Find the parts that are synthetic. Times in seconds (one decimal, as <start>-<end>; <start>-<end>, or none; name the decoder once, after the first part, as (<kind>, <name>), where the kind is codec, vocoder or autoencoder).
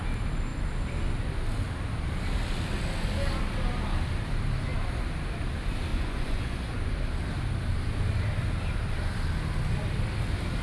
5.9-6.9 (vocoder, Vocos)